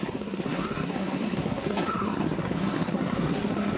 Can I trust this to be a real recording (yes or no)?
no